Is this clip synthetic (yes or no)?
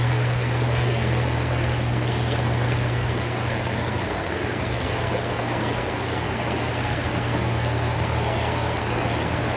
yes